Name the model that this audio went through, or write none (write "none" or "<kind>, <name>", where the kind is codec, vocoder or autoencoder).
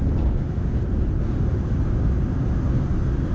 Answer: none